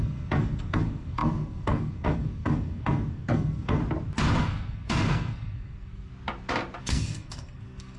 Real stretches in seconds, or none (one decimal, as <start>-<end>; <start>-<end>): 3.8-4.4; 6.1-6.8